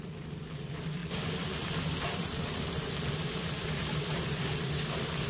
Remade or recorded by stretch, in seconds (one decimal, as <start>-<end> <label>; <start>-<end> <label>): 0.0-1.0 remade; 1.0-2.0 recorded; 2.0-5.3 remade